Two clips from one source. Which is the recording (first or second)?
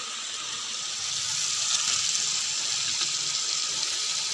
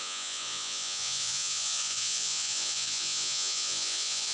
first